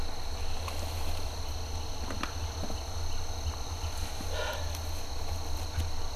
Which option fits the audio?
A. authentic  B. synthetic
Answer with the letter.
A